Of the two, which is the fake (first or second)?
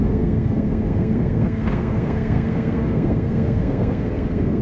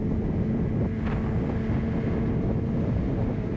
first